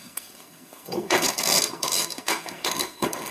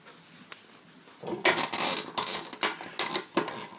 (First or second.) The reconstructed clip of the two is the first